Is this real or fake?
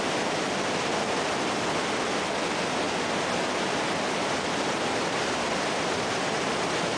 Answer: real